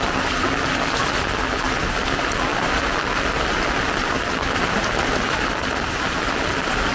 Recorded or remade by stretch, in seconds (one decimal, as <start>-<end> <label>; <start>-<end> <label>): 0.0-6.9 recorded